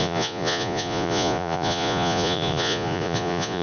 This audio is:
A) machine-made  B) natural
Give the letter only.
A